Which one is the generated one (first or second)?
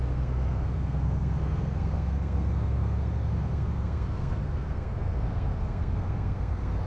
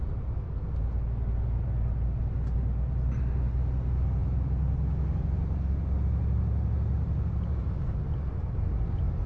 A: first